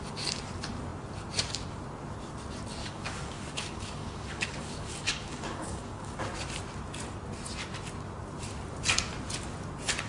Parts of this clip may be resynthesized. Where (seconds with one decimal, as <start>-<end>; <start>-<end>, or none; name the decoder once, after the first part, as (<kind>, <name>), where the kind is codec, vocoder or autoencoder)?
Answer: 2.8-6.4 (codec, DAC)